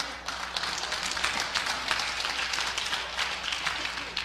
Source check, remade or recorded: recorded